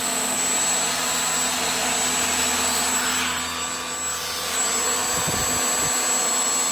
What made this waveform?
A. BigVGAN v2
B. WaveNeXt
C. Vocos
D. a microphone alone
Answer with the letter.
D